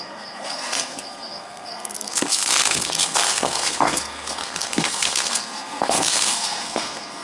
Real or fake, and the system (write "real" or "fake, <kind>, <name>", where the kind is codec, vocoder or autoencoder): fake, codec, SNAC